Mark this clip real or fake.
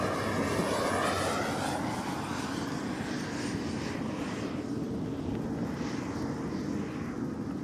real